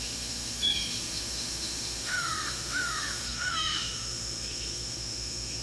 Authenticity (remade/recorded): remade